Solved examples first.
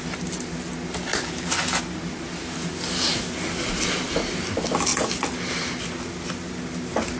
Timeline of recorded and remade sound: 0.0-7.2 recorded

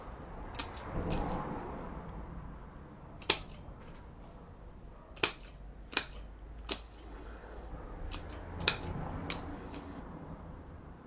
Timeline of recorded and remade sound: 0.0-6.8 recorded; 6.8-7.7 remade; 7.7-9.5 recorded; 9.5-10.0 remade; 10.0-11.1 recorded

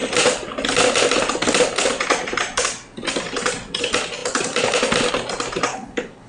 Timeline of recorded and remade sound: 0.0-5.7 recorded; 5.7-6.3 remade

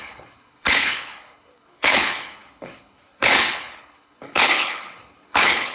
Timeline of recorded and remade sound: 0.0-5.7 remade

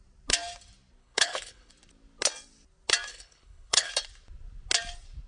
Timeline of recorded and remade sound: 0.0-1.0 recorded; 1.0-1.7 remade; 1.7-3.1 recorded; 3.1-3.9 remade; 3.9-5.3 recorded

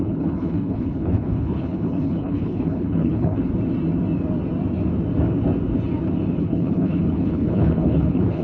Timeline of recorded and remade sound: 0.0-3.5 remade; 3.5-6.4 recorded; 6.4-8.4 remade